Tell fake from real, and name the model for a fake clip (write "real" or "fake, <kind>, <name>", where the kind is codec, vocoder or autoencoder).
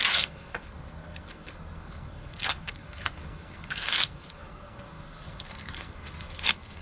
fake, codec, SNAC